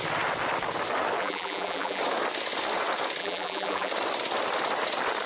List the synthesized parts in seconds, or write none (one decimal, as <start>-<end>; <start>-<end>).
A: 1.2-2.0; 3.2-3.9